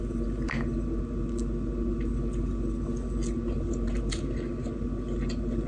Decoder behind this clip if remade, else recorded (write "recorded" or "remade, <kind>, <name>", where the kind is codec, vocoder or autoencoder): recorded